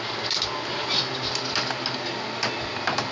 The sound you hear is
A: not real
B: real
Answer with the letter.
B